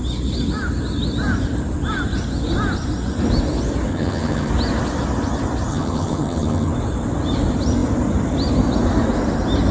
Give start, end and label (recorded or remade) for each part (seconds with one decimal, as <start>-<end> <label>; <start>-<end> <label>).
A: 0.0-3.9 recorded; 3.9-4.5 remade; 4.5-5.7 recorded; 5.7-6.7 remade; 6.7-9.7 recorded